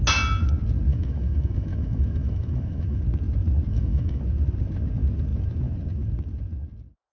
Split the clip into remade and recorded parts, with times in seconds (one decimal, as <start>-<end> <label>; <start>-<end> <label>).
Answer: 0.0-0.9 recorded; 0.9-3.0 remade; 3.0-3.7 recorded; 3.7-4.2 remade; 4.2-7.1 recorded